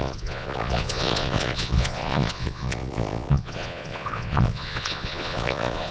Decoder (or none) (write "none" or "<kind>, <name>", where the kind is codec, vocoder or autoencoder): vocoder, Vocos